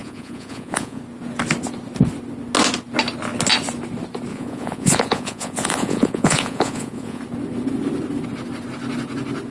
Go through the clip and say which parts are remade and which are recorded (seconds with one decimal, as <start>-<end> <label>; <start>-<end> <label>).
0.0-1.0 remade; 1.0-4.3 recorded; 4.3-7.2 remade; 7.2-9.5 recorded

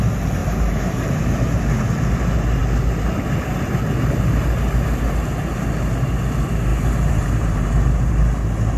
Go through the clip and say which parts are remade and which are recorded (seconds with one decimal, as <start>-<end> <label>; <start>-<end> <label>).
0.0-0.4 recorded; 0.4-1.6 remade; 1.6-6.7 recorded; 6.7-8.1 remade; 8.1-8.8 recorded

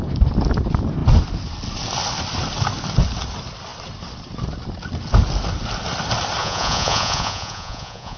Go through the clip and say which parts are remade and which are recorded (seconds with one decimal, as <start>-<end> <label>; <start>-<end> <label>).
0.0-6.4 recorded; 6.4-8.2 remade

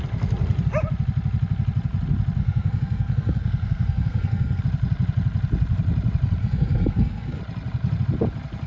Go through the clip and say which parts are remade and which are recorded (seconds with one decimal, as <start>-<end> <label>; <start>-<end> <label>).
0.0-2.4 recorded; 2.4-4.6 remade; 4.6-6.4 recorded; 6.4-7.4 remade; 7.4-8.7 recorded

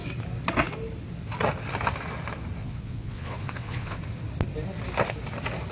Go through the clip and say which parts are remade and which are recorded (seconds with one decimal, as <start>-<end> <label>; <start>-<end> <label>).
0.0-2.6 recorded; 2.6-4.0 remade; 4.0-5.7 recorded